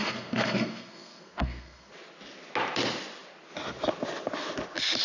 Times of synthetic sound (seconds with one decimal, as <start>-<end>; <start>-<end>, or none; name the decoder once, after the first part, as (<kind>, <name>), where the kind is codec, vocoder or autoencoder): 0.0-1.9 (codec, SNAC)